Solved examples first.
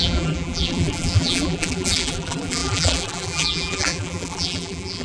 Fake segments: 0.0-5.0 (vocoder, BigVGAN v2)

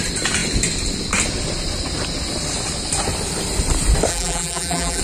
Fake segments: 4.1-5.0 (vocoder, BigVGAN v2)

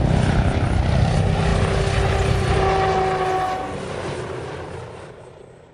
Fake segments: none

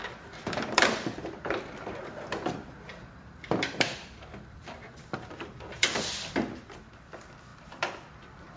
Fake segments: 0.0-8.6 (vocoder, BigVGAN v2)

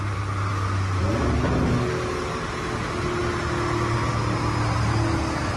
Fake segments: none